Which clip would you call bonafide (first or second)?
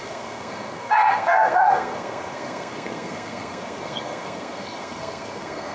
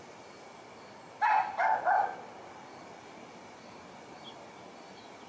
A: second